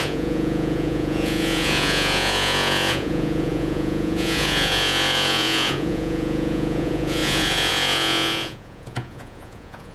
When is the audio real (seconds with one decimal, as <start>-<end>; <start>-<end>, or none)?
none